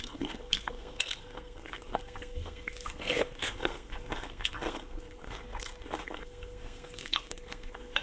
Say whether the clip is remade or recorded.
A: remade